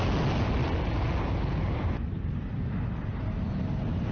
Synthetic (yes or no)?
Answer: no